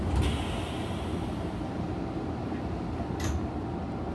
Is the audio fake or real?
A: real